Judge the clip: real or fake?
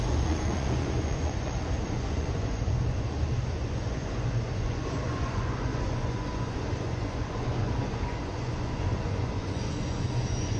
fake